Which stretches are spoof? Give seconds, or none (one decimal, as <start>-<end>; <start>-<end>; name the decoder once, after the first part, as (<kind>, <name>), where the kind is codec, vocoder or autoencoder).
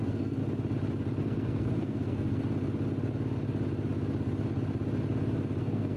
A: 0.0-0.4 (codec, SNAC); 1.2-2.4; 5.6-6.0